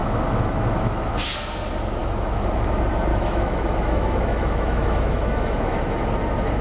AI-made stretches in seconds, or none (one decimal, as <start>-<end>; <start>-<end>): 0.0-1.1; 2.0-2.7; 3.1-6.0

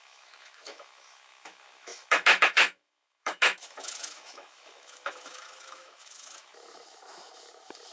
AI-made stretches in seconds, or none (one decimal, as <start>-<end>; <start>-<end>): 0.0-7.9

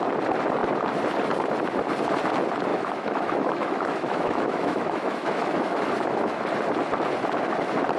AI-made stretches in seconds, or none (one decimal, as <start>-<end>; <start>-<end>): 2.7-6.4

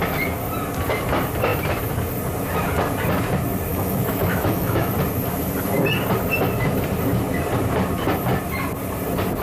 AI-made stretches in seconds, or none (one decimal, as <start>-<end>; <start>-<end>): 3.7-4.9

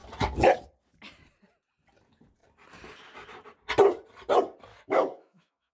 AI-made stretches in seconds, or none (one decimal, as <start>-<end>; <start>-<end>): 4.7-5.7